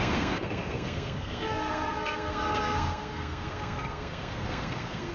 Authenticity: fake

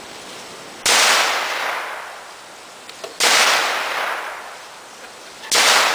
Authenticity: real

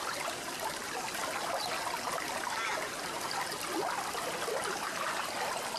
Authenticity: real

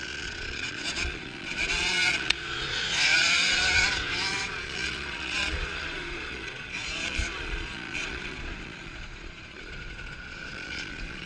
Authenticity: fake